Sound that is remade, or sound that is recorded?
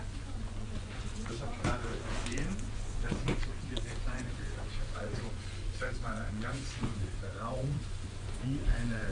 remade